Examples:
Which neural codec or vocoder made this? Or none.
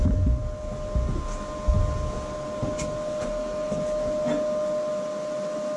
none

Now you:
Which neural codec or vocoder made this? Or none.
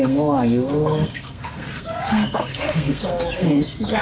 codec, SNAC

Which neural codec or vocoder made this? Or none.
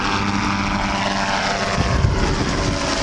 none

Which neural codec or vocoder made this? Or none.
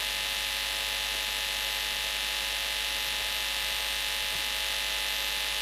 none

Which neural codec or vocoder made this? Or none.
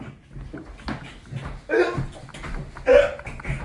none